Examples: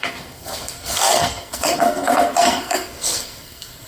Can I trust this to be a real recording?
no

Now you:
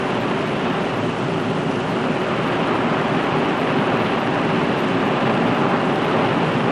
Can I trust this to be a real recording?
yes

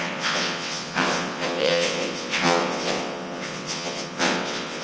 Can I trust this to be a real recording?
no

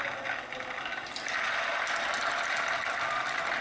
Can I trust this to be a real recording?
yes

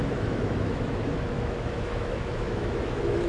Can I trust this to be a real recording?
no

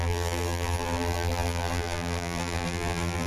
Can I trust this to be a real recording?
no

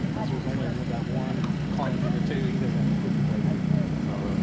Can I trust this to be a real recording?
no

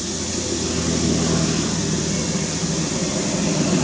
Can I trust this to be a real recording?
yes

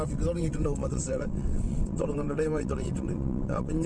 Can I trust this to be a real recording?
no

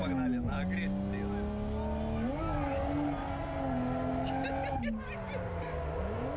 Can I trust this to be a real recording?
yes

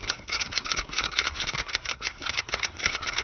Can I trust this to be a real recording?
no